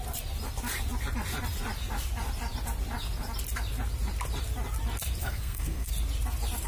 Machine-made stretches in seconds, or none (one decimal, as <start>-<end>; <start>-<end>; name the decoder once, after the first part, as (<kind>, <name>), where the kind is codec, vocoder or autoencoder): 5.2-5.9 (codec, SNAC)